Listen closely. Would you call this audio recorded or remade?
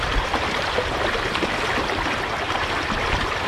recorded